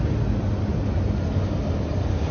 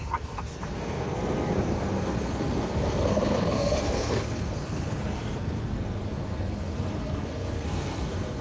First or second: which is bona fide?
first